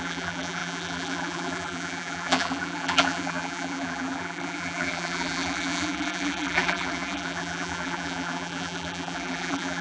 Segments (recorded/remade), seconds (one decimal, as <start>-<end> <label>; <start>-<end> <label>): 0.0-9.8 remade